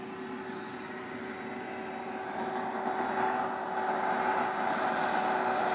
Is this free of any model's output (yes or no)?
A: yes